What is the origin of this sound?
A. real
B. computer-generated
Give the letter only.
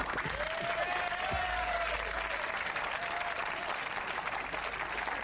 A